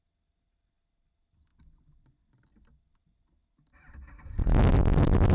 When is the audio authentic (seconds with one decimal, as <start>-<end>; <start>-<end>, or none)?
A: 0.0-5.3